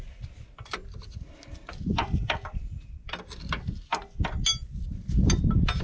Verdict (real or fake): real